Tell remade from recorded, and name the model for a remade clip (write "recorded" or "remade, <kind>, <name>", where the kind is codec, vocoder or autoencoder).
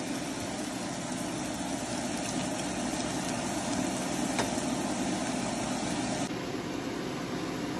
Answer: recorded